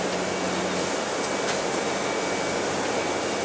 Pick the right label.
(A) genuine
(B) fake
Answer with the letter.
A